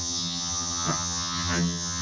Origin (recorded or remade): remade